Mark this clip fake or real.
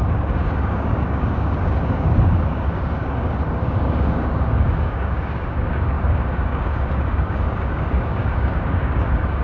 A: fake